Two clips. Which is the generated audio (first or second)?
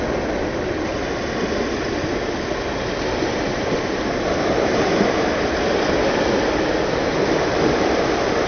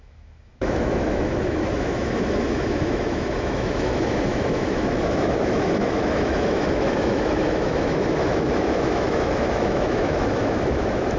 second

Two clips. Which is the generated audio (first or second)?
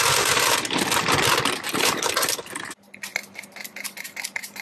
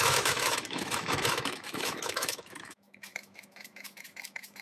second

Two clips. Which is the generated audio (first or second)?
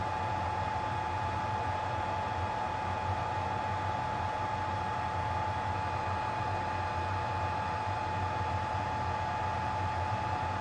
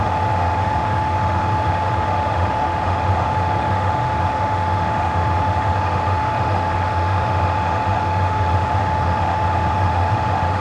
second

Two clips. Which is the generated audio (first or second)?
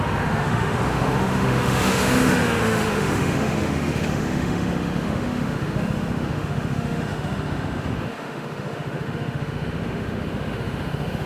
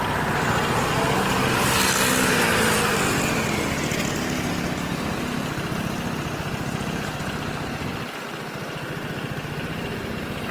first